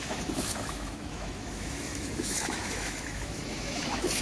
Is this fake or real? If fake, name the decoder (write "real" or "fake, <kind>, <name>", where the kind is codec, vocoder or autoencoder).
fake, autoencoder, DAC-VAE